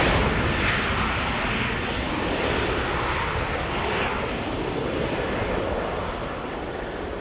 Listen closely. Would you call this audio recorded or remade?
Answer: recorded